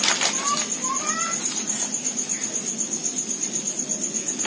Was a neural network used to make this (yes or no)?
no